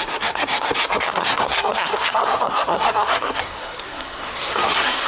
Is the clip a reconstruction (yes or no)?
yes